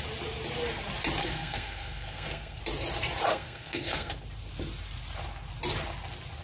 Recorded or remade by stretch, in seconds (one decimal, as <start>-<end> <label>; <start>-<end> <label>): 0.0-1.2 recorded; 1.2-2.6 remade; 2.6-3.3 recorded; 3.3-4.1 remade; 4.1-6.4 recorded